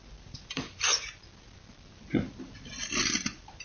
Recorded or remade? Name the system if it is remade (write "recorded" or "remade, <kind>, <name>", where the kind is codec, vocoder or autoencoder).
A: recorded